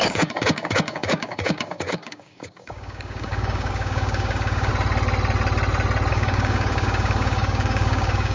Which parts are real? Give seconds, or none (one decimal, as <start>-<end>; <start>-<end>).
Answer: 4.7-6.1